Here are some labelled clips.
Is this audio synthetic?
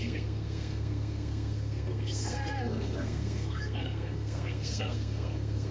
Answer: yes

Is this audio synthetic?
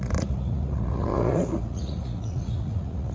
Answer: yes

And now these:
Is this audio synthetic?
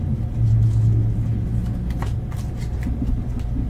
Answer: no